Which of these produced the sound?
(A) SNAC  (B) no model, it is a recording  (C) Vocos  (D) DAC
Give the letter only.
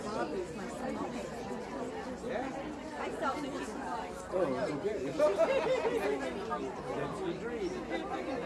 B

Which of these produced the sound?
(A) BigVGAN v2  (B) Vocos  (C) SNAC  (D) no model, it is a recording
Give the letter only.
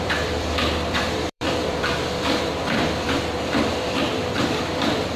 A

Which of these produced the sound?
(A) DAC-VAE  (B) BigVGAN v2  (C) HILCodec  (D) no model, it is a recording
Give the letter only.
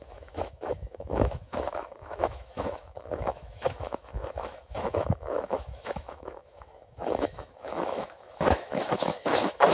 A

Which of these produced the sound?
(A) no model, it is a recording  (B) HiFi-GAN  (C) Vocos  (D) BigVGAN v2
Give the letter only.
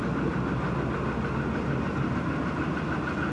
A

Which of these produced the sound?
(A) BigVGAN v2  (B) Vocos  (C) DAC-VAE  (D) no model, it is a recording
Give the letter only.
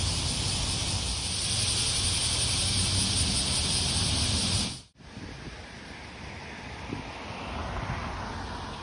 D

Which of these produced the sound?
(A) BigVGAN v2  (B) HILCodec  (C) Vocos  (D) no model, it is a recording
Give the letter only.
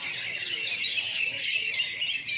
D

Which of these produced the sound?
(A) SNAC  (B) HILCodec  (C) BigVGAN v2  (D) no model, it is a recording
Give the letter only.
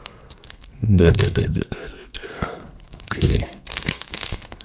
A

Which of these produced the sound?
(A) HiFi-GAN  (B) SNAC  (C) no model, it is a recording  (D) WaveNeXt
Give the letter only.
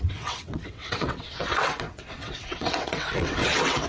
D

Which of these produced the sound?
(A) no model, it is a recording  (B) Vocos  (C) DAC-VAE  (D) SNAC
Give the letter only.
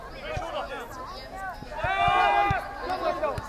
A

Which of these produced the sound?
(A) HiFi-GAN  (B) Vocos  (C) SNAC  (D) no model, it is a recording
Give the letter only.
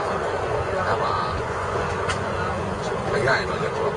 B